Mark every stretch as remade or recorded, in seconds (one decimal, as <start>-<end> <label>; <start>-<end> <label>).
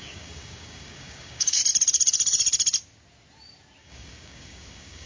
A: 0.0-1.6 remade; 1.6-3.8 recorded; 3.8-5.1 remade